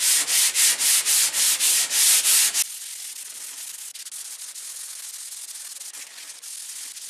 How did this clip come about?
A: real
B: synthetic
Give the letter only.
A